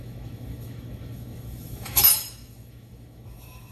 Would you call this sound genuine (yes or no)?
no